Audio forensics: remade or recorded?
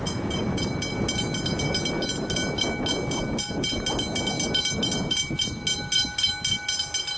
recorded